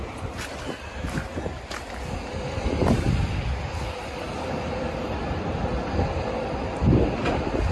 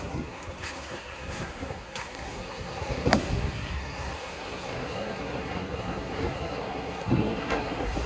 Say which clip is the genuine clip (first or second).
first